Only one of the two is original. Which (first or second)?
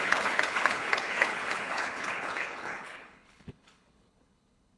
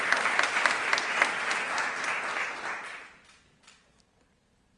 second